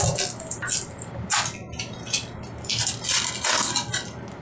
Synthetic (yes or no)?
no